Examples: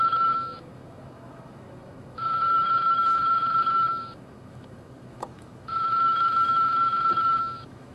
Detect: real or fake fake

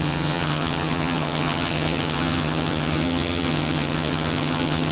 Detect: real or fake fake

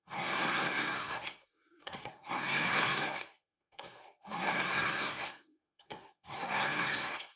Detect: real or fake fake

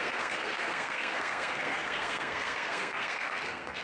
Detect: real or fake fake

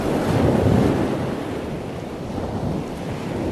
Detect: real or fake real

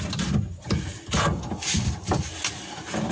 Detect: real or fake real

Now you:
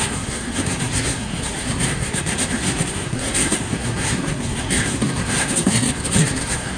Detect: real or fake fake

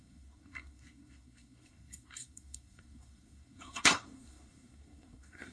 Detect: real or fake fake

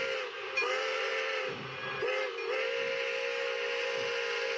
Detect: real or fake real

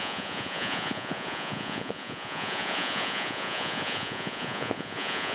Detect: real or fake fake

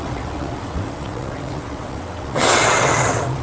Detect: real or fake fake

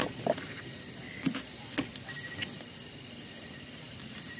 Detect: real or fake real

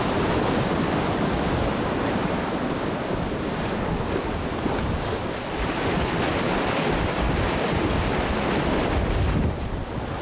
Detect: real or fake real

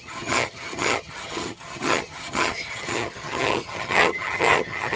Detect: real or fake fake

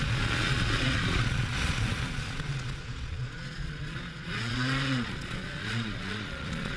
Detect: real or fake fake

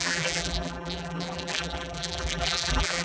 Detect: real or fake fake